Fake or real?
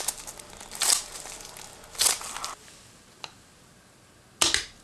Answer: real